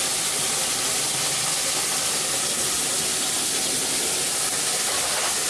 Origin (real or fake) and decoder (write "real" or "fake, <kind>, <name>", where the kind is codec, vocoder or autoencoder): real